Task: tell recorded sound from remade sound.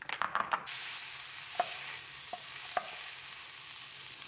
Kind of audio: recorded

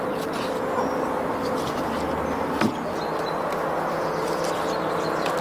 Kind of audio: recorded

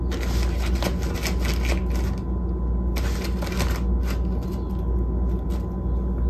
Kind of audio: recorded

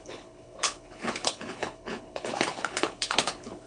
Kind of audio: remade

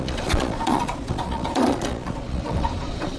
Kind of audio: remade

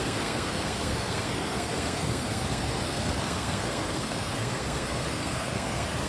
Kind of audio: remade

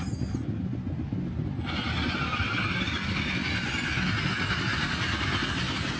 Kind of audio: recorded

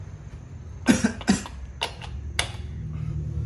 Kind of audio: recorded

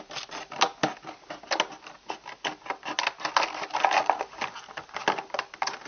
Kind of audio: recorded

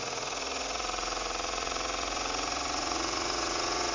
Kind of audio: remade